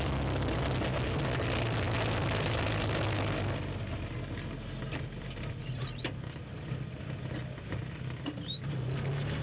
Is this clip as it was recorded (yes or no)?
yes